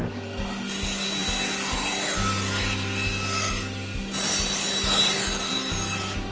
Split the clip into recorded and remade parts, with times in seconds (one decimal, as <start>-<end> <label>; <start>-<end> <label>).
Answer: 0.0-6.3 recorded